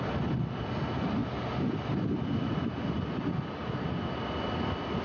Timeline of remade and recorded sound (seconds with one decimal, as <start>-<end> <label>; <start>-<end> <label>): 0.0-5.0 recorded